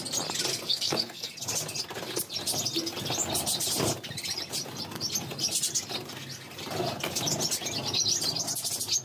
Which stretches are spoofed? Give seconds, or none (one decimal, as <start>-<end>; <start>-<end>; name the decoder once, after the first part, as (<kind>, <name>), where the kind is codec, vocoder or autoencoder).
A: 0.5-1.3 (codec, SNAC)